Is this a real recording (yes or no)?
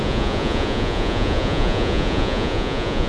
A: no